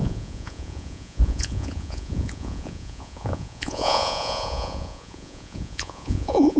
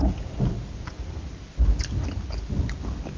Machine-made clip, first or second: first